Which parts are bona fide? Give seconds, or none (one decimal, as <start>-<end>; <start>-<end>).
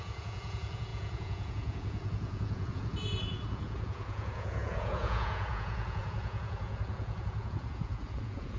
none